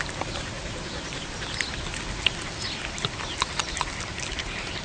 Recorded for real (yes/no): no